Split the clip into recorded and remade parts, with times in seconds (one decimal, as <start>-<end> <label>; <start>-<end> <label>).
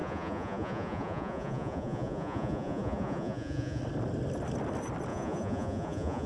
0.0-3.8 remade; 3.8-5.1 recorded; 5.1-6.3 remade